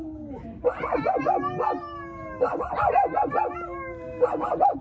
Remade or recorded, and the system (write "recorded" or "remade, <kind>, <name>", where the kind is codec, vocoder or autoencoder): recorded